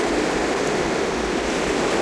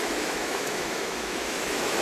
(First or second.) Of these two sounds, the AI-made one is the second